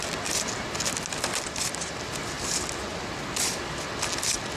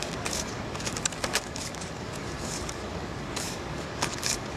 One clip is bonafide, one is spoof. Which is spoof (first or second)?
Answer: second